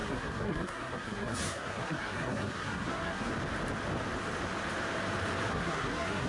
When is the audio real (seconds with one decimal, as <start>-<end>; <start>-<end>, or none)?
3.3-5.5